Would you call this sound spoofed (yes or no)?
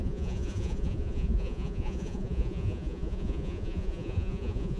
yes